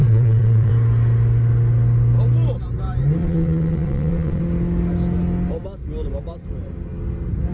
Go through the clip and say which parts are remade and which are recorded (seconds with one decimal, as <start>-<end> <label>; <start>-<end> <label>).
0.0-0.7 remade; 0.7-3.2 recorded; 3.2-4.4 remade; 4.4-7.5 recorded